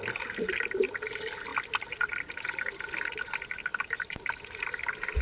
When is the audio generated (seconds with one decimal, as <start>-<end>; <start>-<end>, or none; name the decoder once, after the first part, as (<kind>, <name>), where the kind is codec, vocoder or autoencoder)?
none